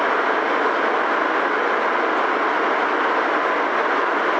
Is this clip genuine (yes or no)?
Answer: yes